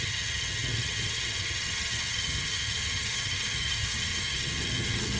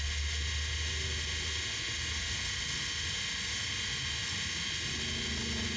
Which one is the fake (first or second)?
first